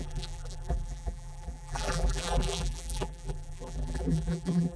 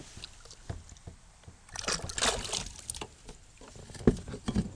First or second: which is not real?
first